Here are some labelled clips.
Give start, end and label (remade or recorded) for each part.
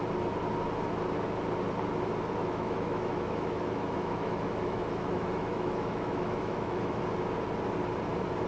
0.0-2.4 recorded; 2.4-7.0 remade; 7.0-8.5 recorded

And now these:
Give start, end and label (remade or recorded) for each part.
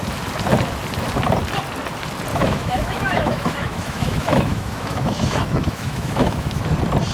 0.0-2.3 recorded; 2.3-6.6 remade; 6.6-7.1 recorded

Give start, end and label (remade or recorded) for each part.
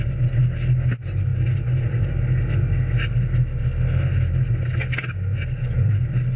0.0-6.4 recorded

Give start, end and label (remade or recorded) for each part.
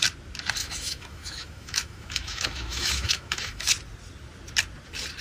0.0-0.6 recorded; 0.6-3.7 remade; 3.7-5.2 recorded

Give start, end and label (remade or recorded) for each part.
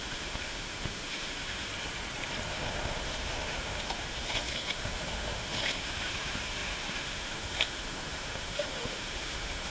0.0-1.7 remade; 1.7-2.5 recorded; 2.5-9.7 remade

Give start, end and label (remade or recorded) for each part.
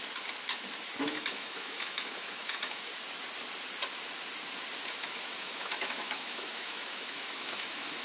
0.0-0.8 recorded; 0.8-2.9 remade; 2.9-4.9 recorded; 4.9-8.0 remade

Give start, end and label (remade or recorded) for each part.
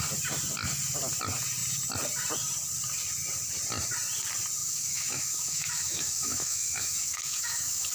0.0-4.6 recorded; 4.6-7.9 remade